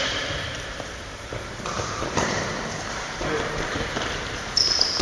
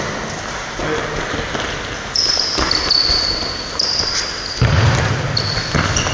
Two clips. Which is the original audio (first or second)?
second